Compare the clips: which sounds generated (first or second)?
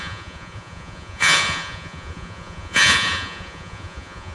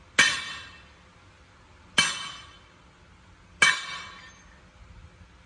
first